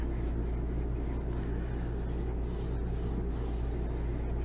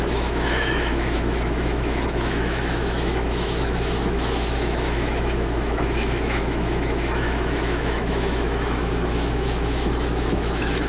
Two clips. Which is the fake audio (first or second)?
second